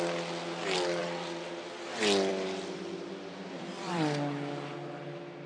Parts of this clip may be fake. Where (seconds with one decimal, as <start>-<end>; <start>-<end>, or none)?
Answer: 1.0-1.5; 2.3-4.7